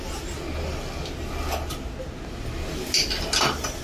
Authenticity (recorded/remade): recorded